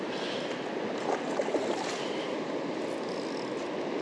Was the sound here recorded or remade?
recorded